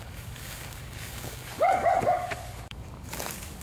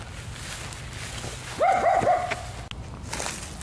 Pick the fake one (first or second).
first